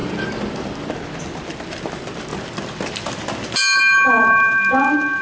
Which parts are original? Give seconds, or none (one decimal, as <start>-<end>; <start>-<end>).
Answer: 0.0-5.2